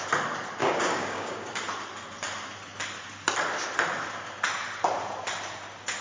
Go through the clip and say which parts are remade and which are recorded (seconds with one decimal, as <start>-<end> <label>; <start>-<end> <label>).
0.0-0.6 recorded; 0.6-1.6 remade; 1.6-6.0 recorded